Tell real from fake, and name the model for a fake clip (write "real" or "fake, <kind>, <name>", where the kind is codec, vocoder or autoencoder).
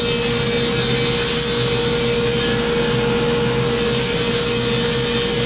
real